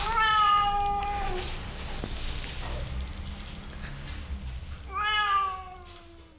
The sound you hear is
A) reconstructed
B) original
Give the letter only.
B